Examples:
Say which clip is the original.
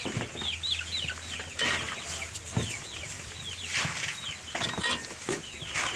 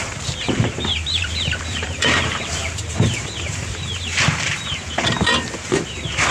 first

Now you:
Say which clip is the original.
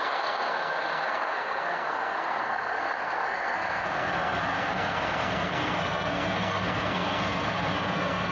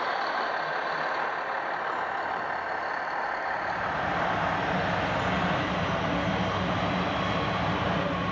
second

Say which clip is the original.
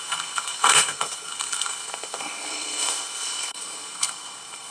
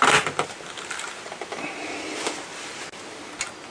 second